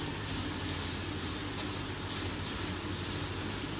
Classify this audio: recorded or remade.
recorded